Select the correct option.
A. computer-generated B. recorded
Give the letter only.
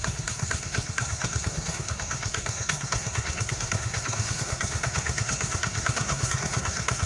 A